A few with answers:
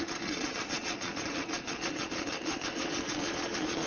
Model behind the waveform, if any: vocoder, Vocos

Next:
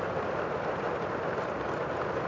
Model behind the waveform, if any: none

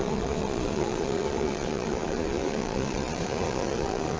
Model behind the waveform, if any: vocoder, Vocos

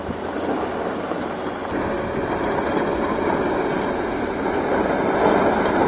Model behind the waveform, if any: none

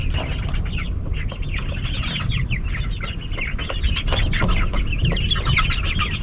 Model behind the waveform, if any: none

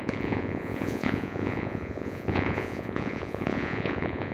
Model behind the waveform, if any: vocoder, Vocos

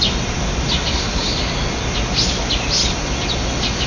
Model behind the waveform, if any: none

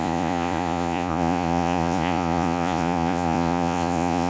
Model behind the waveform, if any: vocoder, Vocos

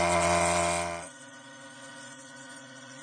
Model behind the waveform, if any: vocoder, Vocos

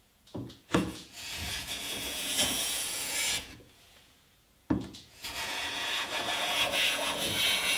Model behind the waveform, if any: vocoder, Vocos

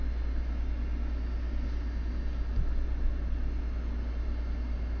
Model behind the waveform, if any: none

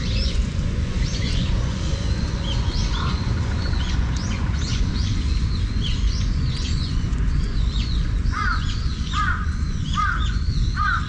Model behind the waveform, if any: vocoder, Vocos